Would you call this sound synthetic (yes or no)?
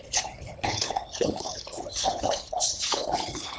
yes